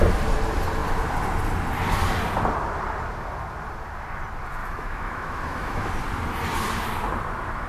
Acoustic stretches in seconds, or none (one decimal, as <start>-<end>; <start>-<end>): 0.0-4.6; 5.9-7.7